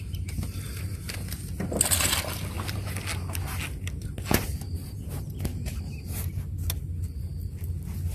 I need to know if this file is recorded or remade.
recorded